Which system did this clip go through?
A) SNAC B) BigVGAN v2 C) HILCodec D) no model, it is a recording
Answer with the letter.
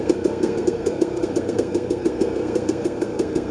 A